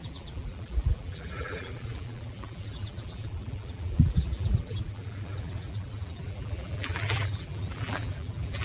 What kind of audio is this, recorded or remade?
remade